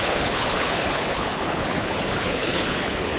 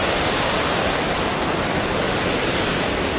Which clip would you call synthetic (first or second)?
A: first